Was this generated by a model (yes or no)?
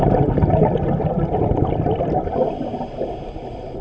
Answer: no